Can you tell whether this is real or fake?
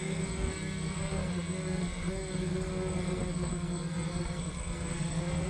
fake